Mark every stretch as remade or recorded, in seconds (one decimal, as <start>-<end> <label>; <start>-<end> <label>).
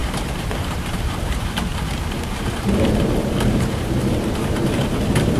0.0-5.4 remade